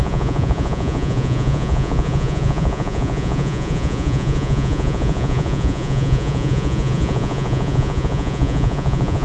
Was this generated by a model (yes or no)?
yes